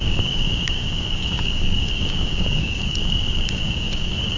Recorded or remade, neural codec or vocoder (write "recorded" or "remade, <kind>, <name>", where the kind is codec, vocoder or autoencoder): remade, codec, DAC